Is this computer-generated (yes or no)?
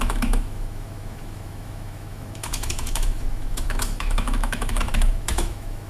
yes